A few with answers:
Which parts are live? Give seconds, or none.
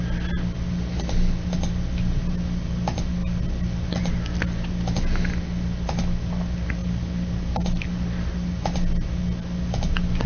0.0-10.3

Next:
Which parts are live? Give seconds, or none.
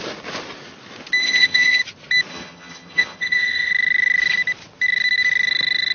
0.0-1.2; 1.8-2.3; 3.7-5.9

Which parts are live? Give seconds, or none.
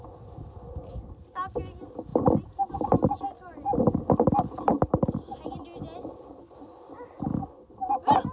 0.0-8.3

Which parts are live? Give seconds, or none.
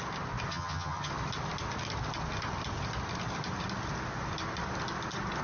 0.0-0.5; 1.1-5.4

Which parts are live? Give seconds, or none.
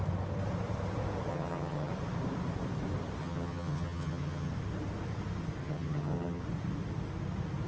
0.0-1.3; 1.9-3.2; 4.5-5.6; 6.4-7.7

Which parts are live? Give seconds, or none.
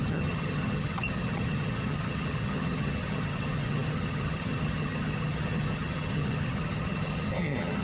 none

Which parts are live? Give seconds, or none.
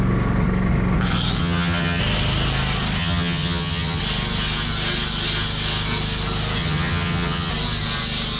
0.0-1.4; 2.0-3.0; 4.0-6.6; 7.5-8.4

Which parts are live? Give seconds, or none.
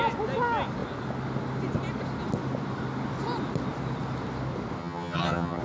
0.0-4.8